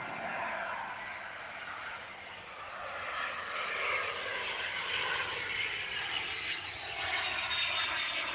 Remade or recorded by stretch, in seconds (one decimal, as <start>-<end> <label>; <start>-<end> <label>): 0.0-8.3 recorded